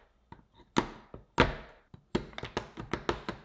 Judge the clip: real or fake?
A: real